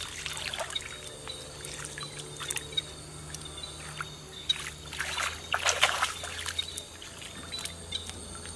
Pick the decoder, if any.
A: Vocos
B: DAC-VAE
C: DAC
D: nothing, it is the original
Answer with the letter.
D